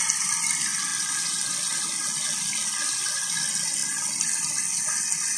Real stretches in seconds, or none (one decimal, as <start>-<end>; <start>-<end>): 0.0-5.4